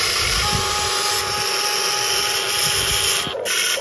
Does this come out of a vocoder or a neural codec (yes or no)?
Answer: no